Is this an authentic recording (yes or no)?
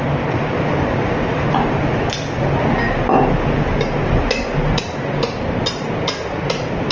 yes